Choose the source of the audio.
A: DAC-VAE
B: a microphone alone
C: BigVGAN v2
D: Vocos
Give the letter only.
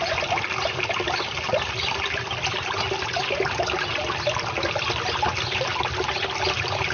B